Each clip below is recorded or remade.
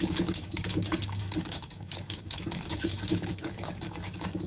remade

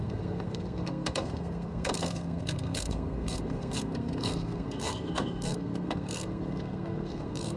remade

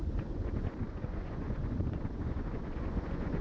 remade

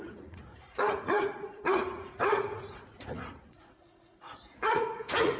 remade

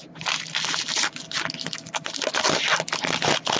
recorded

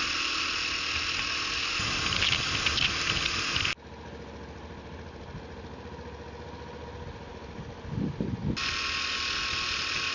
recorded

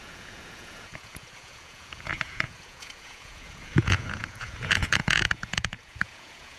remade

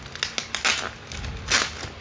recorded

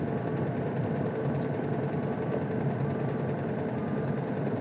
recorded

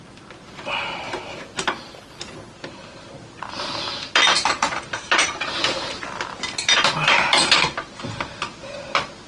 recorded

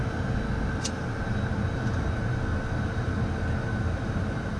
recorded